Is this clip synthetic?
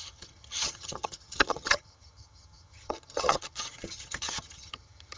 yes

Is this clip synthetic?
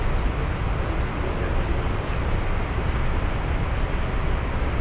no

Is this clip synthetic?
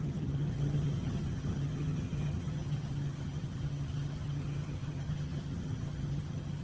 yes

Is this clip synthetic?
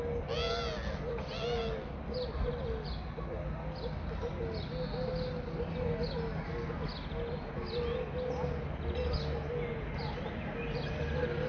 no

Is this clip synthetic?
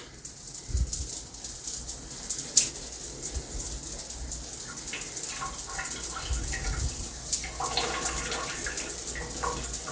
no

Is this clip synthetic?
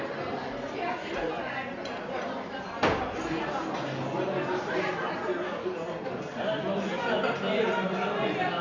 no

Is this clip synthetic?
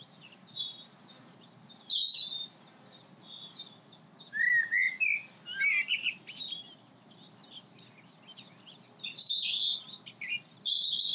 no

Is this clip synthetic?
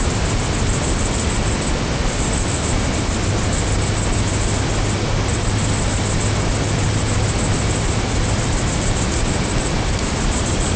no